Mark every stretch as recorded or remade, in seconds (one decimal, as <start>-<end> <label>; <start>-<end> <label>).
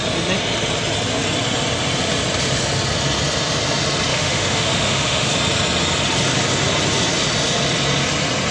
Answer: 0.0-4.1 recorded; 4.1-5.3 remade; 5.3-8.5 recorded